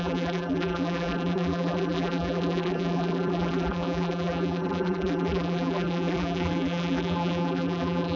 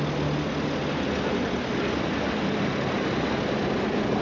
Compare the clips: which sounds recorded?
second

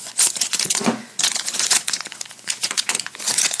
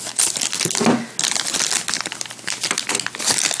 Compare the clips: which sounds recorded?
second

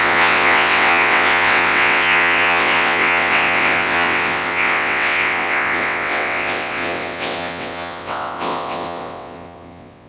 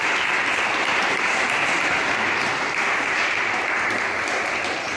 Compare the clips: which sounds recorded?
second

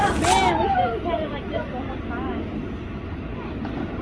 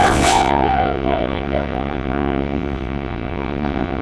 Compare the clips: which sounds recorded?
first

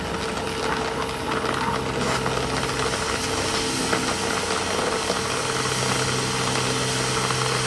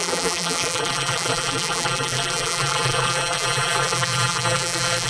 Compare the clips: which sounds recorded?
first